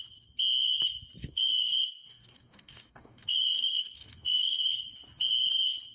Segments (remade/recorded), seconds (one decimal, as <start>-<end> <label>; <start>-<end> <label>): 0.0-1.2 recorded; 1.2-4.7 remade; 4.7-5.9 recorded